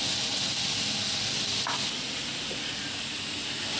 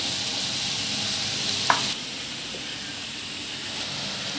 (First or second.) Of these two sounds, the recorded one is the first